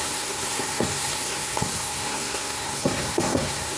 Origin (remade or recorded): remade